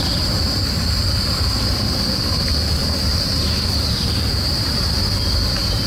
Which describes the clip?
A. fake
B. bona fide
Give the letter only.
A